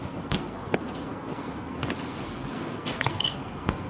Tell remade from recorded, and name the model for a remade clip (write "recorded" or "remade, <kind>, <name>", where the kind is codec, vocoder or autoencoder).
remade, codec, SNAC